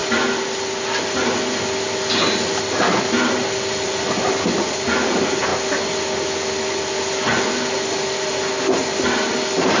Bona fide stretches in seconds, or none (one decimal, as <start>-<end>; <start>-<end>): 0.0-9.8